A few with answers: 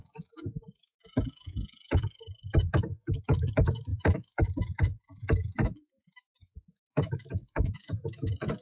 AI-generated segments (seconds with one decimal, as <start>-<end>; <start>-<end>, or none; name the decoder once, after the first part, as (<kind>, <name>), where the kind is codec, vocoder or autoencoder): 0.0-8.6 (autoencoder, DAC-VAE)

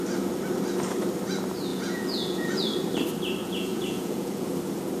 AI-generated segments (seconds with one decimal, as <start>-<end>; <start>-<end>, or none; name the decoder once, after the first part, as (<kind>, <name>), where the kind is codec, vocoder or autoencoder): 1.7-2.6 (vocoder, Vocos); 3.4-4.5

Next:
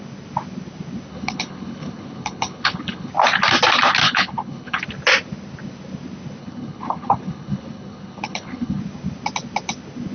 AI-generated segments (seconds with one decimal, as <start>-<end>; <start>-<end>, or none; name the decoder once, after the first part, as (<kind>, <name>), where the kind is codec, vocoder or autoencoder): 1.1-3.1 (codec, HILCodec); 4.0-4.8; 6.4-8.8

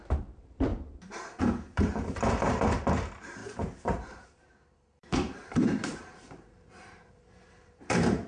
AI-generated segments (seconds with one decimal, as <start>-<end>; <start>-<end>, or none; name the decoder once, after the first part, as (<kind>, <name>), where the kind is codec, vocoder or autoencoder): 0.0-8.3 (vocoder, BigVGAN v2)